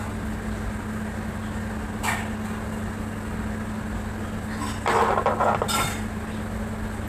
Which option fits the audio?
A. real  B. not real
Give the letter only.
A